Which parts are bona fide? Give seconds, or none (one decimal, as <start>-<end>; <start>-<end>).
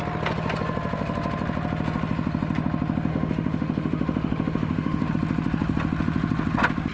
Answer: 0.0-3.1; 5.1-6.9